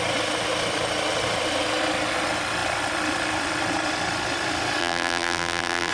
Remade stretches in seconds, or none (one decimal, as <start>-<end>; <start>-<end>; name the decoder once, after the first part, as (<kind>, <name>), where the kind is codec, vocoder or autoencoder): 4.8-5.9 (vocoder, BigVGAN v2)